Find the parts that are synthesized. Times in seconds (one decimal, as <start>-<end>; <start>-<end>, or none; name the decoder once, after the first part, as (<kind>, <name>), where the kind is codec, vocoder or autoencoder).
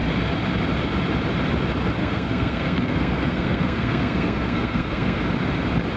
2.0-5.2 (codec, SNAC)